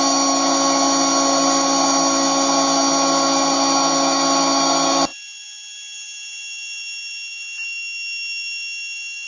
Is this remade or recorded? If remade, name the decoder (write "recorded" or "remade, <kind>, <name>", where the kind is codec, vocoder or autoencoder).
recorded